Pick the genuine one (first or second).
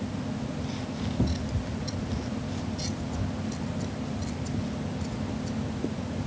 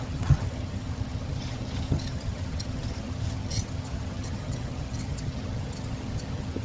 first